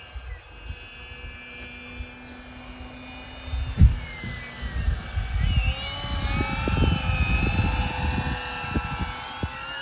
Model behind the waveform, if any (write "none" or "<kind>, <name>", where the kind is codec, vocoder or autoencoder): none